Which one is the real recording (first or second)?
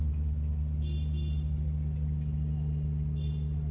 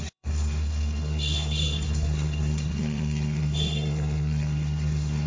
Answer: first